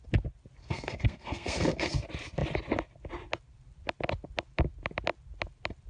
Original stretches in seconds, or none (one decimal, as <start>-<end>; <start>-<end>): 0.0-0.6; 2.0-5.9